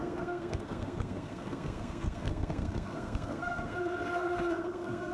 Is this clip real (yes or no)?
no